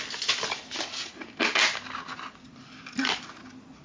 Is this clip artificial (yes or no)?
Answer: no